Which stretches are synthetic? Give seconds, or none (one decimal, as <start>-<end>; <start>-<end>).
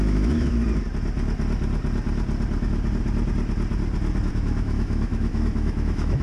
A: 0.0-0.6; 4.3-6.2